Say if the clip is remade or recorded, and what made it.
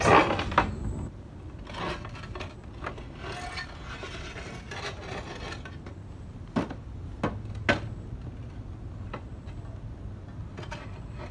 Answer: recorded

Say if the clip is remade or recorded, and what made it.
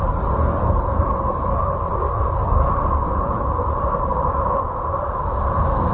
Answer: recorded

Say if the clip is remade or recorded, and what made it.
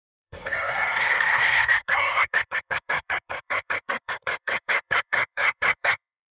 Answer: remade, codec, SNAC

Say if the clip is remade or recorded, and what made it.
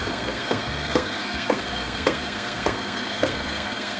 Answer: remade, codec, SNAC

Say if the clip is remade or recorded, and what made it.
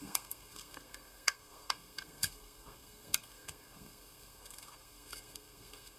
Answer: remade, codec, SNAC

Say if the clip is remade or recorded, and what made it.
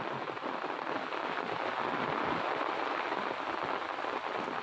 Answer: recorded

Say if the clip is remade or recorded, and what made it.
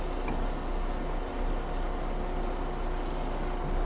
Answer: recorded